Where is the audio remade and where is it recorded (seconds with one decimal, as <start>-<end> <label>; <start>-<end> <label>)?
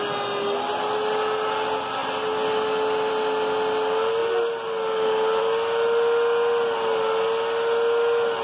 0.0-8.4 recorded